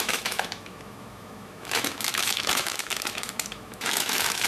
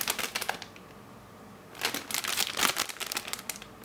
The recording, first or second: second